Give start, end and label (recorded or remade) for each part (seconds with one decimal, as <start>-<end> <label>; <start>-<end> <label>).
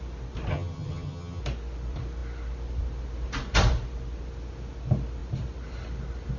0.0-0.5 recorded; 0.5-1.4 remade; 1.4-6.4 recorded